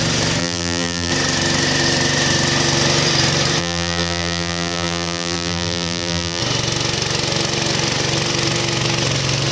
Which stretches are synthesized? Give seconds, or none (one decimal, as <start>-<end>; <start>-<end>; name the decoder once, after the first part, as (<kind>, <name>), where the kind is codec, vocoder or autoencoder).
0.4-1.1 (vocoder, BigVGAN v2); 3.6-6.4

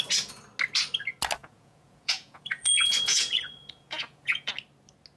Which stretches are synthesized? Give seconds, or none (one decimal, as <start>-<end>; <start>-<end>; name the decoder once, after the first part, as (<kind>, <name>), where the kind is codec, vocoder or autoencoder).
1.4-4.5 (vocoder, Vocos)

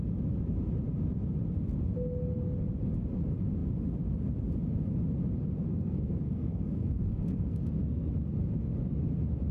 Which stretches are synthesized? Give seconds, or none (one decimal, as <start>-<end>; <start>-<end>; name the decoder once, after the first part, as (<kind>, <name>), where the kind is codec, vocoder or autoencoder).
5.7-8.1 (codec, SNAC)

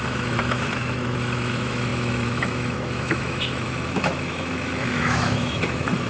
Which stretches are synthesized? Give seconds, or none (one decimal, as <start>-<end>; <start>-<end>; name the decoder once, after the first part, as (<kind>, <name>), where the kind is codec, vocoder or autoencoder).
0.0-6.1 (autoencoder, DAC-VAE)

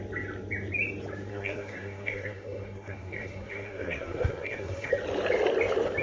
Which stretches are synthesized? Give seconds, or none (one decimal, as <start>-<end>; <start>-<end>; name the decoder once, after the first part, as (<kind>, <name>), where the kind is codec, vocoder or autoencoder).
1.3-4.9 (codec, SNAC)

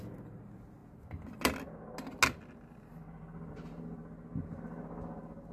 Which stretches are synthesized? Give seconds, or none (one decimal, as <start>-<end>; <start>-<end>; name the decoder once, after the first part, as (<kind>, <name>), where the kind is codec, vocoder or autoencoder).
none